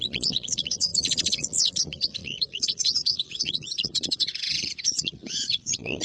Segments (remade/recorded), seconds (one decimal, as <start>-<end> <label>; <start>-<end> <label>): 0.0-6.0 remade